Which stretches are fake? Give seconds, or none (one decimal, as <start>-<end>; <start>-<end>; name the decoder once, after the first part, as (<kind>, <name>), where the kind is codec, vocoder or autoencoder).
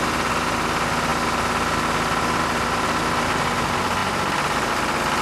none